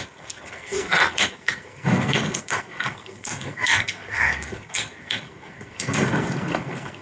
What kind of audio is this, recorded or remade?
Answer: remade